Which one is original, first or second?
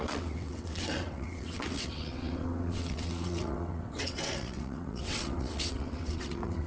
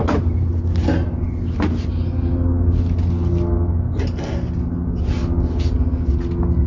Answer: second